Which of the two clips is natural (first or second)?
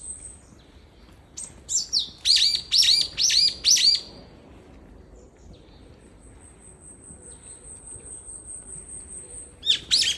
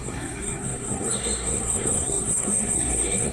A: first